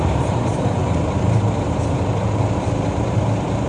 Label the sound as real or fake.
fake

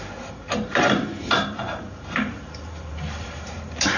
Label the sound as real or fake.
fake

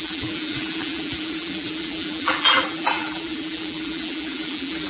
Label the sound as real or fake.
fake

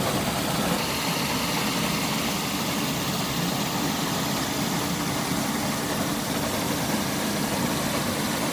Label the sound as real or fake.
real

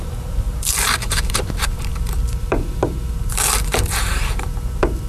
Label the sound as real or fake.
fake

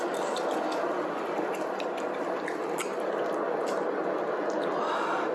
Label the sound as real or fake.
real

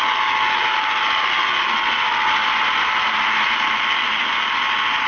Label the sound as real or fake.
real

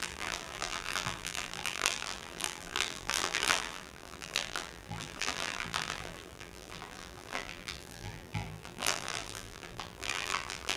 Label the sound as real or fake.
fake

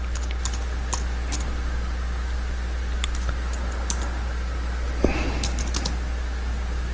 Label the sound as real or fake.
real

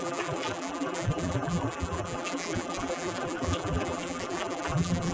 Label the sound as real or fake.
fake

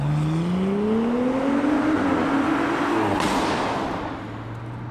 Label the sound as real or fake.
real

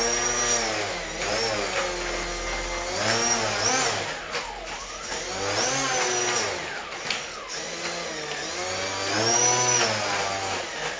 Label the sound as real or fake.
real